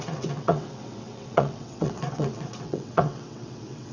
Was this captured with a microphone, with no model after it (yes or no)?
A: no